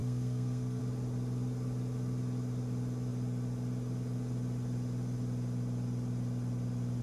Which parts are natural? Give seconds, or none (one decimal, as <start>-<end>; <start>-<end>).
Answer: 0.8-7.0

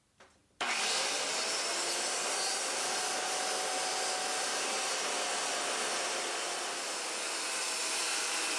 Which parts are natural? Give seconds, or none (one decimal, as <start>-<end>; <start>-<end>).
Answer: 0.0-8.6

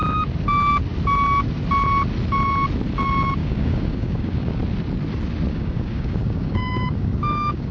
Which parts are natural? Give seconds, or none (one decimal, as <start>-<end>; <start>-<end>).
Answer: 0.0-3.4; 4.6-5.5